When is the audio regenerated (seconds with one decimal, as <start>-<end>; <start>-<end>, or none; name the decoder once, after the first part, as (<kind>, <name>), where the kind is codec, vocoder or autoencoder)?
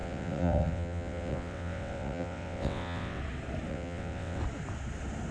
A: 0.0-3.2 (vocoder, WaveNeXt); 3.7-4.4